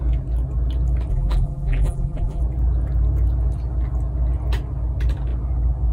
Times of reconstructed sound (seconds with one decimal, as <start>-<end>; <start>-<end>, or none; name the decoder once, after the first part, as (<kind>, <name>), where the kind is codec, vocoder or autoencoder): 1.1-2.4 (vocoder, BigVGAN v2)